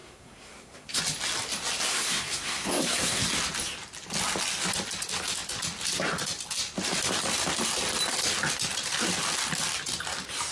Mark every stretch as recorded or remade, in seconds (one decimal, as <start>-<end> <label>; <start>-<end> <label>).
0.0-1.0 remade; 1.0-1.9 recorded; 1.9-3.2 remade; 3.2-10.5 recorded